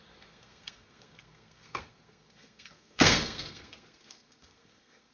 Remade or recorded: remade